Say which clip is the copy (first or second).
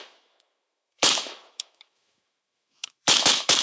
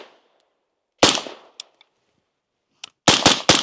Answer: first